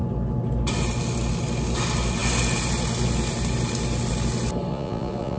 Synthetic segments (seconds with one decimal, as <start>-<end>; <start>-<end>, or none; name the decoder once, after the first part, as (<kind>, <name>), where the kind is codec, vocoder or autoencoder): 4.7-5.4 (vocoder, Vocos)